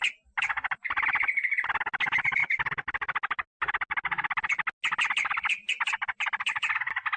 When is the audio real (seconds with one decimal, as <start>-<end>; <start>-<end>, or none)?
0.0-7.2